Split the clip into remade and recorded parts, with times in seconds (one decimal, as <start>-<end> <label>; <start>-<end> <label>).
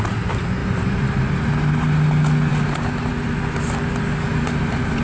0.0-0.6 recorded; 0.6-1.3 remade; 1.3-2.5 recorded; 2.5-3.1 remade; 3.1-4.3 recorded; 4.3-5.0 remade